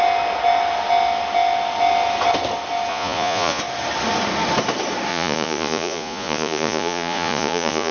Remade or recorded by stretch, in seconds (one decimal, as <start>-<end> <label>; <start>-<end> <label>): 0.0-2.9 recorded; 2.9-3.6 remade; 3.6-5.1 recorded; 5.1-7.9 remade